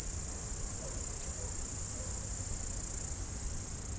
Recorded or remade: recorded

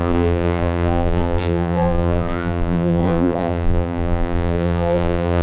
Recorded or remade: remade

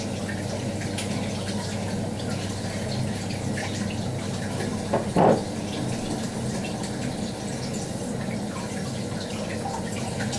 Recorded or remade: recorded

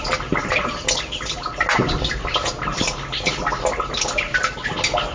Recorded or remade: recorded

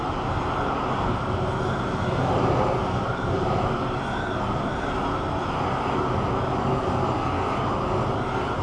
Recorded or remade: recorded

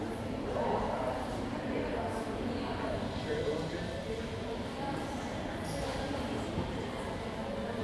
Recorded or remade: remade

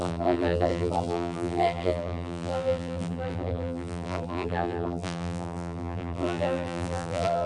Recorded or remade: remade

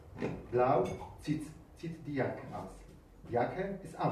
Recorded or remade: recorded